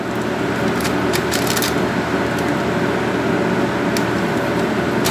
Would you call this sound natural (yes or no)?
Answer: yes